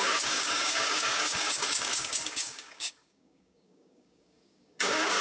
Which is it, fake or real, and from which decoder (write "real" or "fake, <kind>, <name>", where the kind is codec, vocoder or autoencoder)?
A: fake, codec, DAC